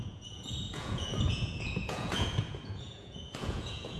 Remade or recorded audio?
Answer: remade